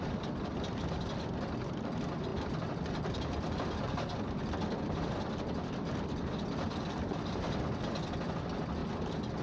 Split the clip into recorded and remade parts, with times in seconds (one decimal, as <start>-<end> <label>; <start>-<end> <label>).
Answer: 0.0-9.4 recorded

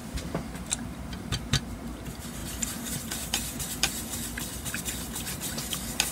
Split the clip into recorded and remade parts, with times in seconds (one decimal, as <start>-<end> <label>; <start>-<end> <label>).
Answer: 0.0-1.6 remade; 1.6-6.1 recorded

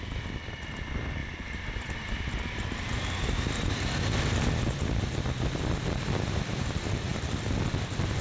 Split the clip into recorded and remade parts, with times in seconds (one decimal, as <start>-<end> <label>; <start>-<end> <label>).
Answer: 0.0-1.2 recorded; 1.2-3.9 remade; 3.9-8.2 recorded

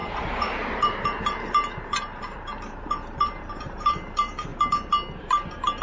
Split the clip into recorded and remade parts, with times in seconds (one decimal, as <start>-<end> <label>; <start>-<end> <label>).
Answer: 0.0-4.5 remade; 4.5-5.2 recorded; 5.2-5.8 remade

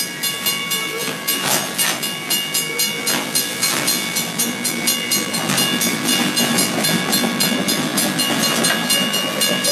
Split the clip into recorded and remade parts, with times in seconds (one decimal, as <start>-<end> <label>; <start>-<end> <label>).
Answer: 0.0-9.7 remade

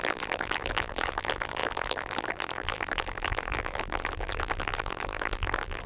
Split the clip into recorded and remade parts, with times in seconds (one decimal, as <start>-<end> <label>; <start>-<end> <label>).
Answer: 0.0-5.9 remade

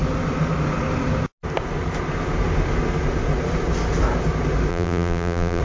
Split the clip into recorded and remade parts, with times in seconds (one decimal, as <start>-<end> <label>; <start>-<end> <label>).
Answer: 0.0-4.7 recorded; 4.7-5.6 remade

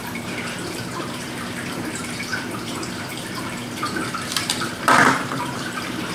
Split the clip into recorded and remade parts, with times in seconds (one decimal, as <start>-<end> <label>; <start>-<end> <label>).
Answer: 0.0-6.1 remade